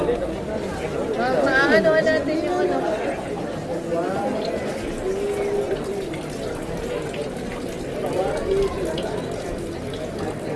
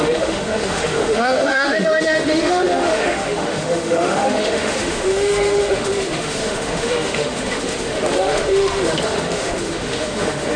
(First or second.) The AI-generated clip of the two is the second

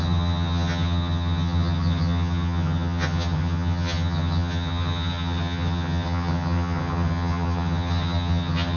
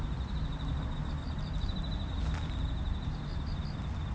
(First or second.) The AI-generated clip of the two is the first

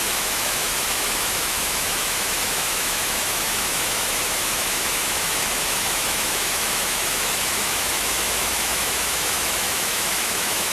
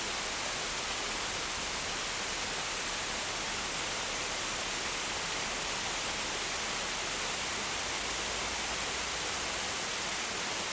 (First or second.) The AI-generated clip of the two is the first